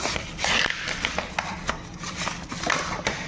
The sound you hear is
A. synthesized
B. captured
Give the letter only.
B